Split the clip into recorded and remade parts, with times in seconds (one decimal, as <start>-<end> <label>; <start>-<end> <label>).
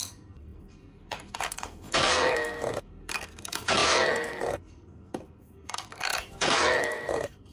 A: 0.0-7.5 remade